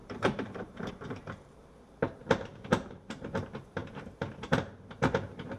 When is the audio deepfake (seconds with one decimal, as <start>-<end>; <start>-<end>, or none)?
0.0-2.2; 2.9-5.6